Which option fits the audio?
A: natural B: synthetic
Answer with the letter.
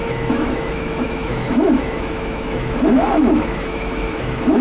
B